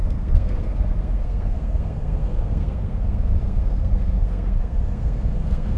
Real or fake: fake